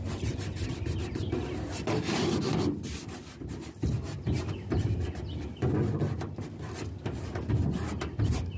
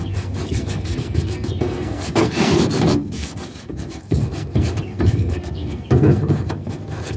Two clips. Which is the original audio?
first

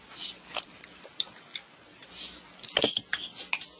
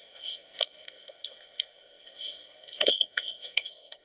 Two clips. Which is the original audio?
first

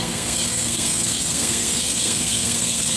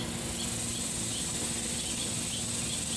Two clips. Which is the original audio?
second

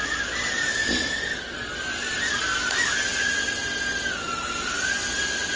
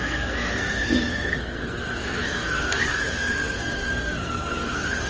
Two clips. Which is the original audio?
first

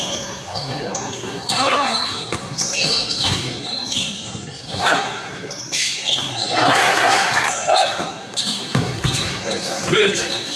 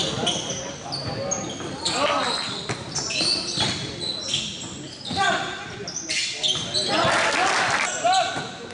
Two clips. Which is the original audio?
second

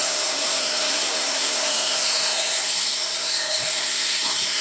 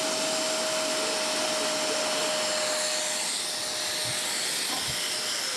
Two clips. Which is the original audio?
second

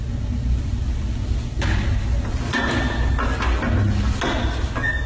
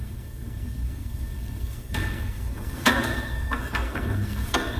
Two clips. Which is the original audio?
first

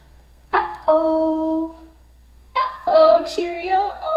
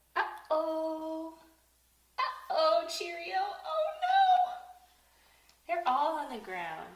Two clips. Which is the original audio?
second